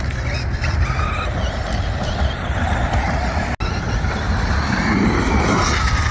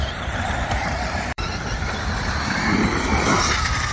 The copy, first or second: second